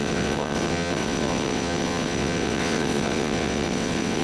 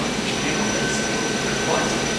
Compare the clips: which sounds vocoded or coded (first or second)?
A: first